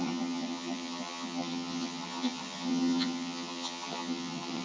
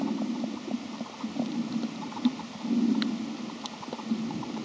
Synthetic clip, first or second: first